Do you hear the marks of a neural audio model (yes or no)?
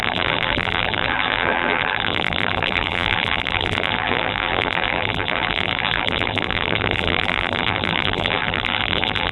yes